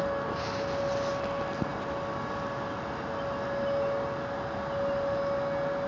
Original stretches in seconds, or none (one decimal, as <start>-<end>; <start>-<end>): 0.0-5.9